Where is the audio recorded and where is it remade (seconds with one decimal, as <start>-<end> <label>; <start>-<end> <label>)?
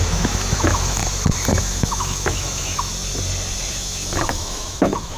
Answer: 0.0-1.0 remade; 1.0-1.6 recorded; 1.6-2.9 remade; 2.9-3.7 recorded; 3.7-5.2 remade